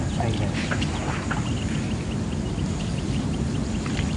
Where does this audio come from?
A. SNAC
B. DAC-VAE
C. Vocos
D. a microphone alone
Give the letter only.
D